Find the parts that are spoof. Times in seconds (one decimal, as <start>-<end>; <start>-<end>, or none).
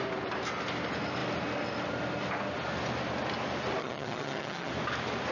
3.8-4.7